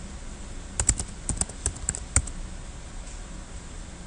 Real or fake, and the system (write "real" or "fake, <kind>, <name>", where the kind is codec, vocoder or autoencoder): real